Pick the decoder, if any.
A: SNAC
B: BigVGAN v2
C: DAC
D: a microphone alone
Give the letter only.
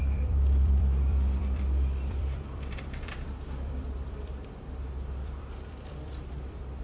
B